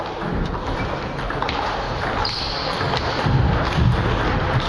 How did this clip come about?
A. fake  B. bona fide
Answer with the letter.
B